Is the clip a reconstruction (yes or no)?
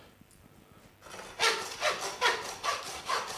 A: no